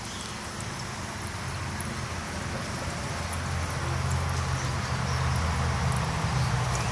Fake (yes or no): no